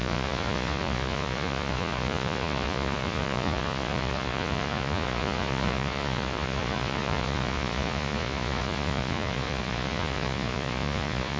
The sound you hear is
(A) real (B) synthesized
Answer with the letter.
B